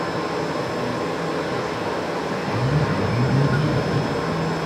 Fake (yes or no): no